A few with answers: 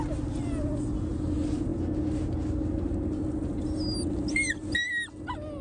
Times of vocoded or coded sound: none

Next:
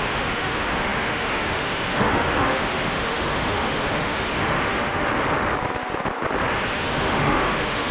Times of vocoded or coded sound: 0.0-5.1 (autoencoder, DAC-VAE); 6.7-7.9

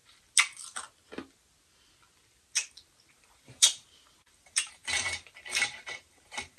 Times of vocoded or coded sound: 3.1-6.6 (vocoder, BigVGAN v2)

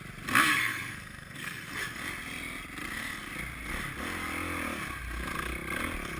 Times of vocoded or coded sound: 0.5-1.8 (codec, SNAC)

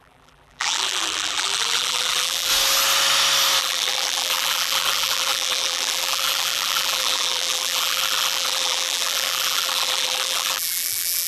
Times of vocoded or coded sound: 0.0-2.5 (vocoder, BigVGAN v2); 3.6-11.3

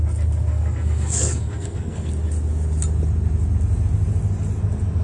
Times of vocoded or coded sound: 0.5-2.1 (codec, SNAC)

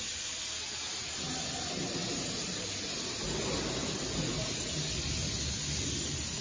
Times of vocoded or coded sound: none